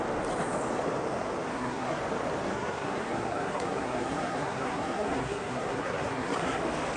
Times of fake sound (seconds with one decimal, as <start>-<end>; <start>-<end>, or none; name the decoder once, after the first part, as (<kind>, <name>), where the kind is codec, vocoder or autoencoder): 1.5-2.0 (codec, SNAC); 2.4-6.6